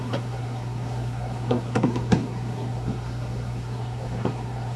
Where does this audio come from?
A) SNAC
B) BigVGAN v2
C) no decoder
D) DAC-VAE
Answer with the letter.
A